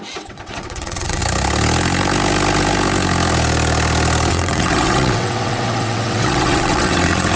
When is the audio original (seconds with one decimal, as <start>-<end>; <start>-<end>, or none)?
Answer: 1.2-4.3